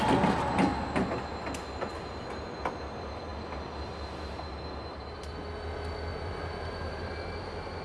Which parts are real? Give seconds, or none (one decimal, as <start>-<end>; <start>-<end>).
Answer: 0.0-6.1; 7.1-7.8